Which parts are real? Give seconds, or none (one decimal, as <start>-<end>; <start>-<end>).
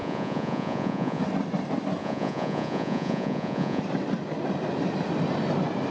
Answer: 1.2-2.0; 3.8-5.9